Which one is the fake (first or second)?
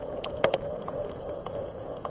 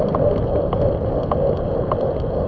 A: first